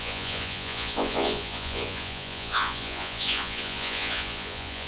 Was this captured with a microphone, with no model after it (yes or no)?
no